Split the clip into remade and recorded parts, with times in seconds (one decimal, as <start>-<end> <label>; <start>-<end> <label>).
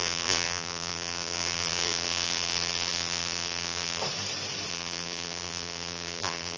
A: 0.0-4.0 remade; 4.0-4.7 recorded; 4.7-6.6 remade